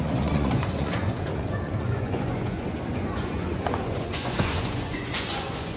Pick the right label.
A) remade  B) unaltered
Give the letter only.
A